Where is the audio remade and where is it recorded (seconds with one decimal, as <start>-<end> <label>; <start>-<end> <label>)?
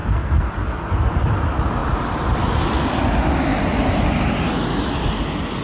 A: 0.0-0.9 remade; 0.9-5.6 recorded